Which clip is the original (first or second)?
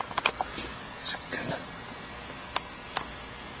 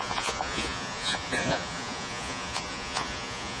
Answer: first